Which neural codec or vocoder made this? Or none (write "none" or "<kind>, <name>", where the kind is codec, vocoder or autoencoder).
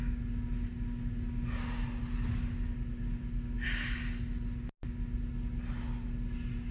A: none